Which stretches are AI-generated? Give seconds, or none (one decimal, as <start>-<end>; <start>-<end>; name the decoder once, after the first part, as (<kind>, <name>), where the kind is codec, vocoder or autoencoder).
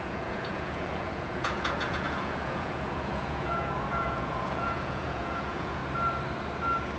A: 0.0-5.8 (vocoder, Vocos)